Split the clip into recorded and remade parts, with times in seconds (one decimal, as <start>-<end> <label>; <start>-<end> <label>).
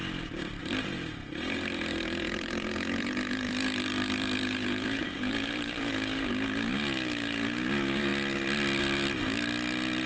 0.0-0.6 recorded; 0.6-5.9 remade; 5.9-10.1 recorded